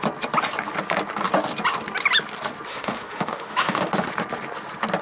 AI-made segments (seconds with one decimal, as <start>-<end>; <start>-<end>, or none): 2.7-3.9